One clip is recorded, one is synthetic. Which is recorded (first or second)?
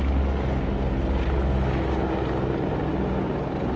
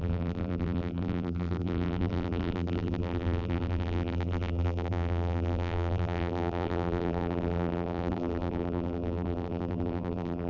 first